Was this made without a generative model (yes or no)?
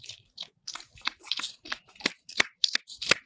no